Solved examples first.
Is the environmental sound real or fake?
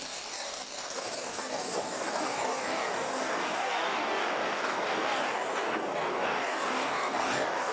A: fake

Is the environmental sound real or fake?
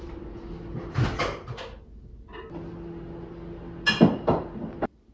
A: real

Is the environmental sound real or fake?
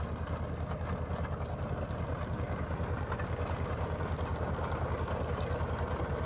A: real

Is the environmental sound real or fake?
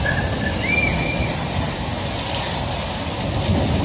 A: real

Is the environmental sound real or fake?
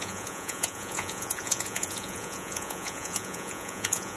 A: fake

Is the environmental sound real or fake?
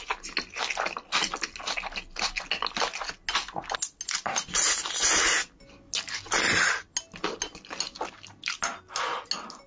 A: real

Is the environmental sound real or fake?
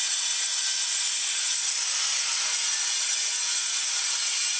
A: real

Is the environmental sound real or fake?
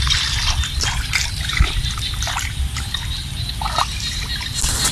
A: real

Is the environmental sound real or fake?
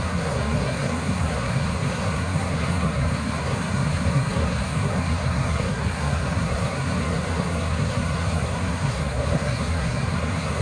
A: fake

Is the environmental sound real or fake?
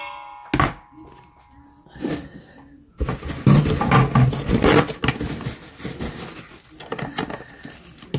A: real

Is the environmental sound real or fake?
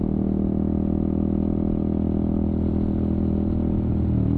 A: real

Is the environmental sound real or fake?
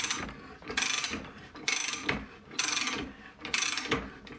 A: real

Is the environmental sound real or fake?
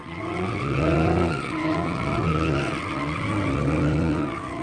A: fake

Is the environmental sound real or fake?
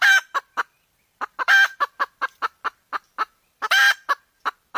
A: fake